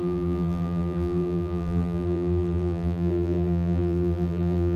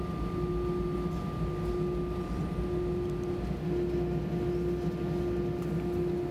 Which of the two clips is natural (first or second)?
second